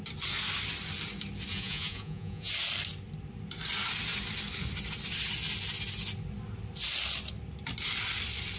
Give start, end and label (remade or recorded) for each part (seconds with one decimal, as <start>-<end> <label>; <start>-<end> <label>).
0.0-1.5 recorded; 1.5-2.5 remade; 2.5-8.6 recorded